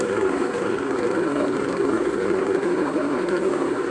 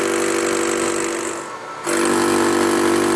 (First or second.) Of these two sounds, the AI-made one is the first